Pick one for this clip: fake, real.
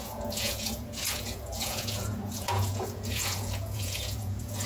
fake